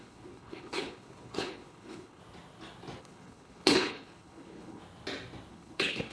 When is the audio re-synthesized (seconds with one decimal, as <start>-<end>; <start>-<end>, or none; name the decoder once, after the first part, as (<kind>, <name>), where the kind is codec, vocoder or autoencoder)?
0.0-2.2 (codec, HILCodec); 3.0-4.8; 5.5-6.1